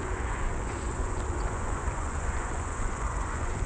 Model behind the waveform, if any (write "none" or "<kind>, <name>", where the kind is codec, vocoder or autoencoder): vocoder, Vocos